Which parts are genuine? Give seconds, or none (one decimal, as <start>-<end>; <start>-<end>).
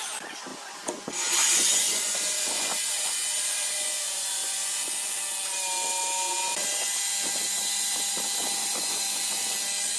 0.0-0.5; 5.2-8.6; 9.6-10.0